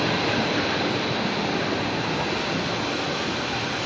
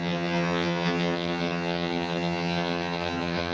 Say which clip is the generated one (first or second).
second